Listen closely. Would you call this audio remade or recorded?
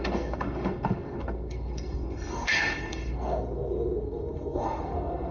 remade